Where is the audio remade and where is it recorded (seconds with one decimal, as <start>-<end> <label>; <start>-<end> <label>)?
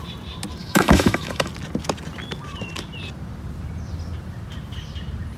0.0-0.6 recorded; 0.6-1.5 remade; 1.5-5.4 recorded